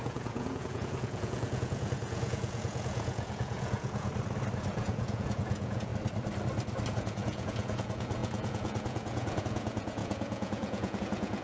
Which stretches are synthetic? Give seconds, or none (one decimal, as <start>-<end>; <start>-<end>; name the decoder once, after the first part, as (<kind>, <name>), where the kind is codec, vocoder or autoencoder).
0.0-4.1 (vocoder, Vocos); 4.7-5.9; 6.9-11.4